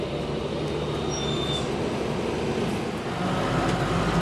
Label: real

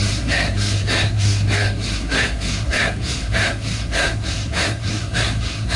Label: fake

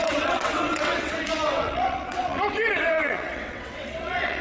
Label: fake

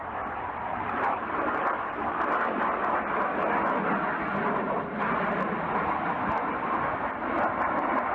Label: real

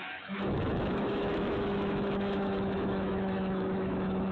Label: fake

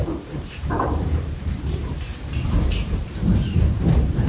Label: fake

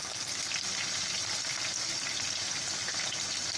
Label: real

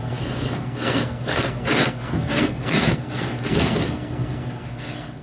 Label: fake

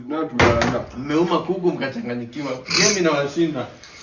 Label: real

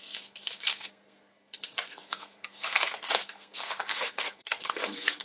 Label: fake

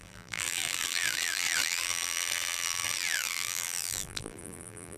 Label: fake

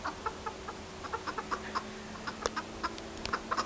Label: real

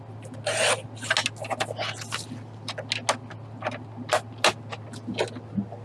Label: real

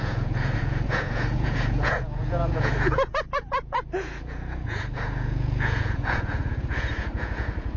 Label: fake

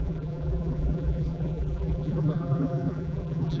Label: fake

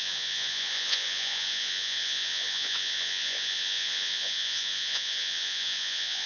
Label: fake